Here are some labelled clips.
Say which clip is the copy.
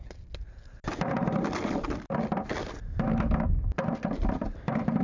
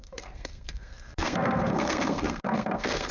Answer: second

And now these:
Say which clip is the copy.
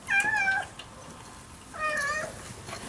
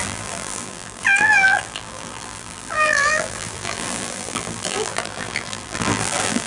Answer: second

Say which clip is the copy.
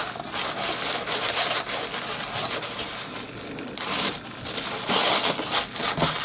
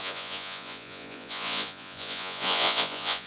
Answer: second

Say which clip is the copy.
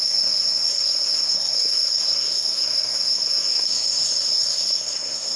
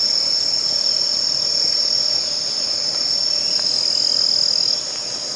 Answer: first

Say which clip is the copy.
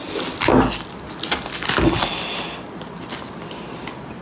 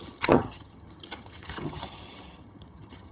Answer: second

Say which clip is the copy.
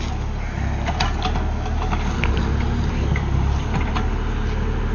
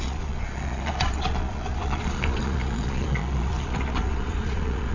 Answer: second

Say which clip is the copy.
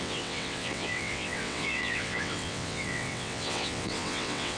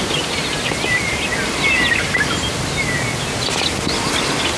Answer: first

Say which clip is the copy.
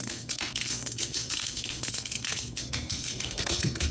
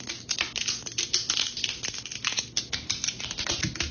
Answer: first